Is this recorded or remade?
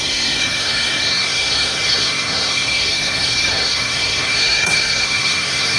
remade